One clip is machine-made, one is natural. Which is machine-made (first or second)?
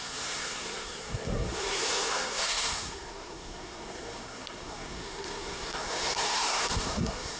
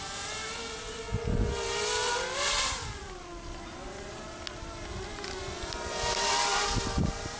first